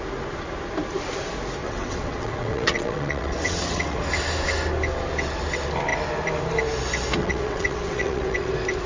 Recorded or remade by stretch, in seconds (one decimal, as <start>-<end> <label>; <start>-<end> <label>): 0.0-1.6 recorded; 1.6-4.0 remade; 4.0-7.2 recorded; 7.2-8.5 remade; 8.5-8.9 recorded